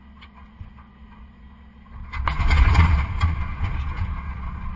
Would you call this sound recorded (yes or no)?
no